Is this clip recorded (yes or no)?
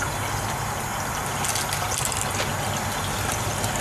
yes